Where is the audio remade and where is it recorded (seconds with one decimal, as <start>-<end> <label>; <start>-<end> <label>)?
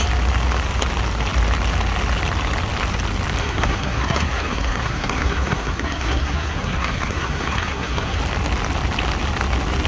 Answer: 0.0-3.4 recorded; 3.4-8.2 remade; 8.2-9.9 recorded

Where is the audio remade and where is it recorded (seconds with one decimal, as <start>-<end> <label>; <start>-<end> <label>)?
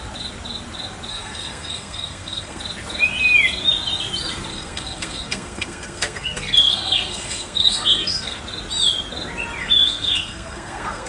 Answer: 0.0-1.1 recorded; 1.1-2.6 remade; 2.6-4.5 recorded; 4.5-8.4 remade; 8.4-9.6 recorded; 9.6-11.1 remade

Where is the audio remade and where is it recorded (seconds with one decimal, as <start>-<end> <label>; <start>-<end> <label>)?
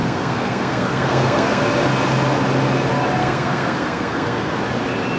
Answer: 0.0-1.6 remade; 1.6-3.2 recorded; 3.2-4.6 remade; 4.6-5.2 recorded